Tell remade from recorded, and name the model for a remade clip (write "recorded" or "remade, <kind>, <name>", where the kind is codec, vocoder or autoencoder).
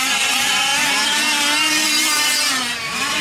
remade, vocoder, BigVGAN v2